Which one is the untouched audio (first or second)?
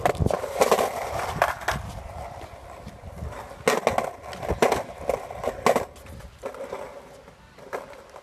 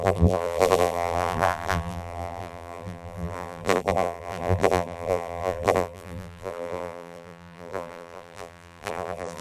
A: first